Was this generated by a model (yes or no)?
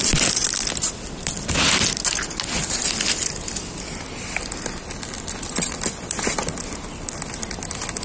no